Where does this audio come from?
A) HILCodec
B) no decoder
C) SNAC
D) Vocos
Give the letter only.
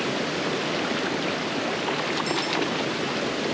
B